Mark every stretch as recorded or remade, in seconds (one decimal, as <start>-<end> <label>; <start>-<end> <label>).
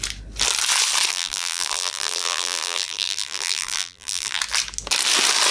0.0-1.1 recorded; 1.1-4.4 remade; 4.4-5.5 recorded